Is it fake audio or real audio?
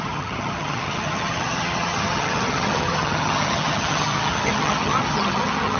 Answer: fake